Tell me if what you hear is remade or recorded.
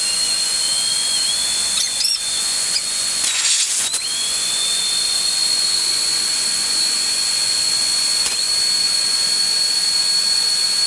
remade